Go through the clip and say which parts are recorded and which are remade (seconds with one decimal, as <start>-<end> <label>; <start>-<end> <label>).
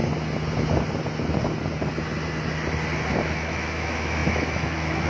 0.0-3.1 recorded; 3.1-5.1 remade